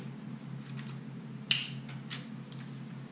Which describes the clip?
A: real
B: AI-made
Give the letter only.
A